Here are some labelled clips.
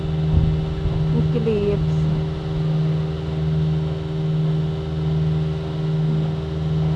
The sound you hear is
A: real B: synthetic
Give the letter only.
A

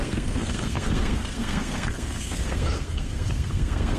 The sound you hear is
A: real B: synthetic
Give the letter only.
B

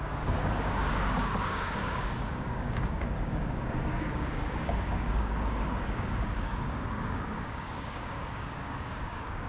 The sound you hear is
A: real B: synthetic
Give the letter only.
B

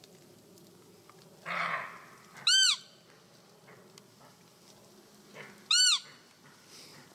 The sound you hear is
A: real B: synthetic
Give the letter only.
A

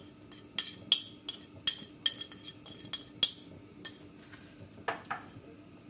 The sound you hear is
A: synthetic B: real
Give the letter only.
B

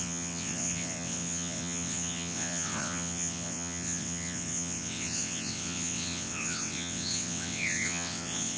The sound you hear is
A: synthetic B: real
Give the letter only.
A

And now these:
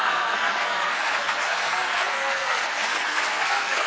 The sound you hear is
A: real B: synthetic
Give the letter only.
B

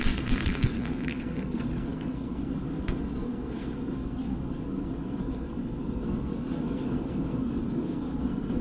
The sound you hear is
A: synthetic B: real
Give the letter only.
A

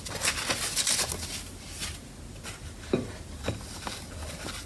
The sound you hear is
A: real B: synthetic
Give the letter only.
A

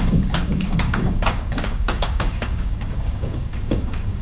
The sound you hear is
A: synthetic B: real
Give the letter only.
A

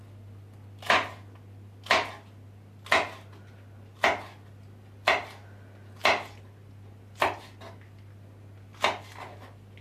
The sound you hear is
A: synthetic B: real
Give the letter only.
B